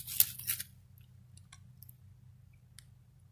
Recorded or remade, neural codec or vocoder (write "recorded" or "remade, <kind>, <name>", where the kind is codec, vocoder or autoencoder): recorded